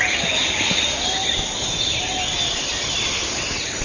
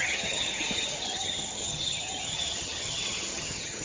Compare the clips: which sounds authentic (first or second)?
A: first